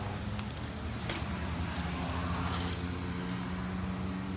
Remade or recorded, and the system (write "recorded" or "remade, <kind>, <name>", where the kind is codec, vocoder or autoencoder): recorded